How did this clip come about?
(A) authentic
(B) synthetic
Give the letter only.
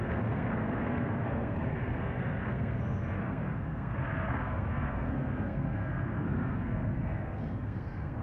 B